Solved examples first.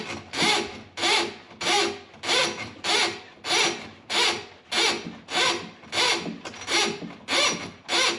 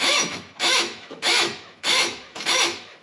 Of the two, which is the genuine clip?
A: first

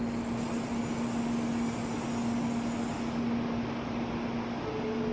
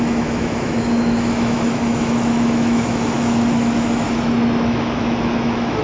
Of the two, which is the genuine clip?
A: first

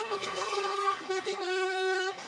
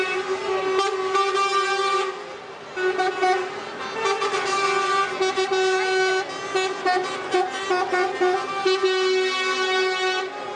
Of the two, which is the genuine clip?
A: second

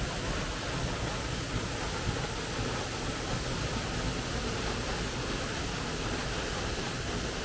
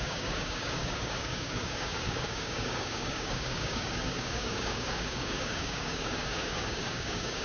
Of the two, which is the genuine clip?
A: first